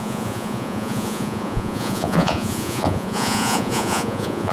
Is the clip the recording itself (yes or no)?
no